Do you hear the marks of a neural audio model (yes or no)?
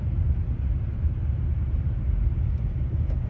yes